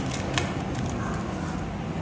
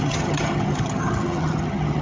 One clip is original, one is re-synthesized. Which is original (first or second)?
first